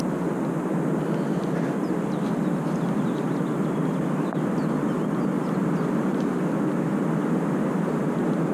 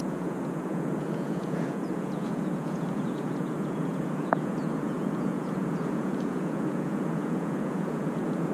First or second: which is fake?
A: second